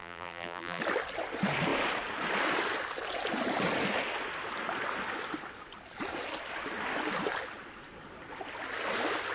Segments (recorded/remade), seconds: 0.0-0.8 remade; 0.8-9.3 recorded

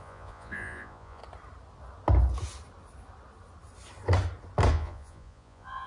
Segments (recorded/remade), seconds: 0.0-1.2 remade; 1.2-4.7 recorded; 4.7-5.9 remade

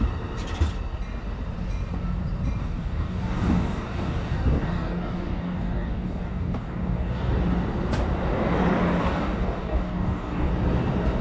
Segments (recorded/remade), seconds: 0.0-2.6 recorded; 2.6-7.3 remade; 7.3-9.0 recorded; 9.0-10.5 remade; 10.5-11.2 recorded

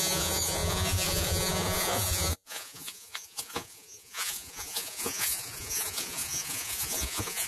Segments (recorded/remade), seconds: 0.0-7.5 remade